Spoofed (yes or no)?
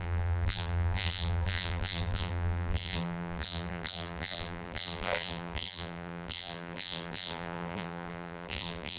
yes